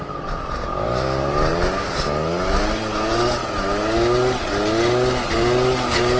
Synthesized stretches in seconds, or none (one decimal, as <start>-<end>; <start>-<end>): none